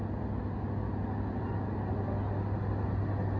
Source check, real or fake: real